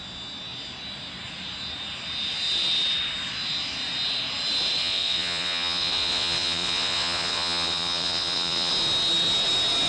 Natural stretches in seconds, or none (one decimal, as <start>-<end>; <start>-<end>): 0.0-4.8; 8.7-9.9